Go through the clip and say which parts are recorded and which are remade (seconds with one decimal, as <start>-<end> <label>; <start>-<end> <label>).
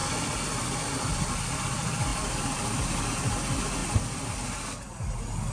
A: 0.0-1.3 remade; 1.3-2.1 recorded; 2.1-2.8 remade; 2.8-3.8 recorded; 3.8-5.0 remade; 5.0-5.5 recorded